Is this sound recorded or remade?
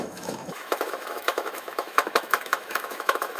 remade